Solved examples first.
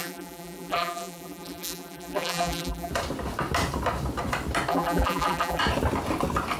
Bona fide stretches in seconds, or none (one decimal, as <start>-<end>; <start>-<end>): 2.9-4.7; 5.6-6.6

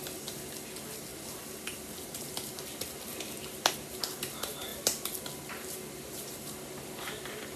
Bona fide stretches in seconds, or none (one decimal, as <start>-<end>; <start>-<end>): 0.0-7.6

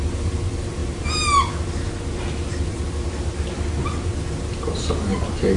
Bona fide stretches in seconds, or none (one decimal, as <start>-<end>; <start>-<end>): 0.0-5.6

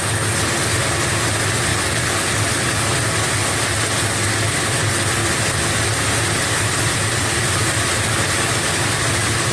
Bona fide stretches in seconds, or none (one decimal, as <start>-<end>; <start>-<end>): 0.0-1.7; 2.5-5.2

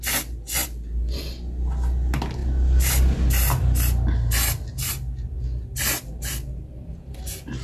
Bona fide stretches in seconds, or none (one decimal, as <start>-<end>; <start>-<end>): 0.0-7.6

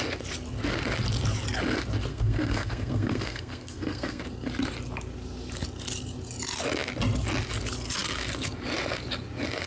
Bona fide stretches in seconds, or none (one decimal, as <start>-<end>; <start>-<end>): 0.0-2.1; 4.2-9.7

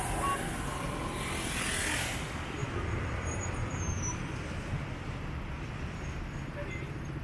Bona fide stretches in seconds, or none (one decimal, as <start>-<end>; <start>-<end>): 0.0-7.2

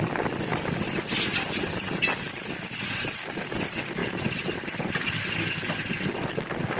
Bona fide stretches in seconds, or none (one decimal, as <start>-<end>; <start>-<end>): 0.0-6.8